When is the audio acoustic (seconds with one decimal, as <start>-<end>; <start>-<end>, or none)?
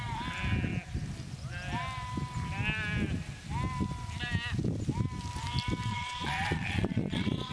0.0-5.9